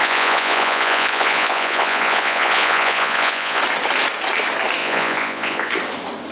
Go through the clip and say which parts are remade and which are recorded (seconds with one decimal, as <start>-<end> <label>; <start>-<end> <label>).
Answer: 0.0-3.6 remade; 3.6-4.8 recorded; 4.8-5.7 remade; 5.7-6.3 recorded